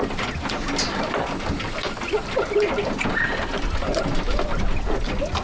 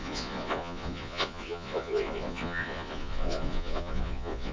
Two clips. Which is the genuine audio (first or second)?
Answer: first